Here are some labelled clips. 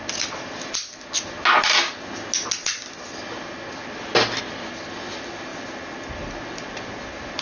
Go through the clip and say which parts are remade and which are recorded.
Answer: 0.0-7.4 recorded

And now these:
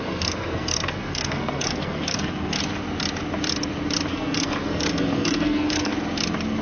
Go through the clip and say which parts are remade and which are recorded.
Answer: 0.0-2.6 remade; 2.6-4.1 recorded; 4.1-5.9 remade; 5.9-6.6 recorded

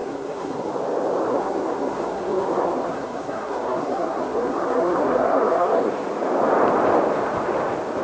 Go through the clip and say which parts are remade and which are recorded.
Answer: 0.0-0.7 remade; 0.7-1.3 recorded; 1.3-5.9 remade; 5.9-8.0 recorded

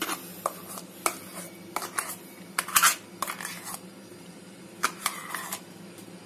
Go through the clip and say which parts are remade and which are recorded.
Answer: 0.0-4.1 recorded; 4.1-5.3 remade; 5.3-6.3 recorded

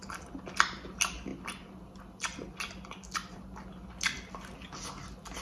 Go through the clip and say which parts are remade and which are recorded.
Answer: 0.0-5.4 recorded